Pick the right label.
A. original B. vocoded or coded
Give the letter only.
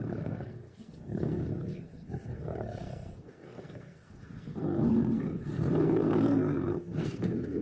B